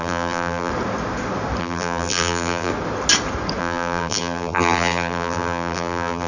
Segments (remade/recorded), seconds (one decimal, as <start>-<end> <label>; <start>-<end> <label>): 0.0-0.7 remade; 0.7-1.6 recorded; 1.6-2.7 remade; 2.7-3.6 recorded; 3.6-6.3 remade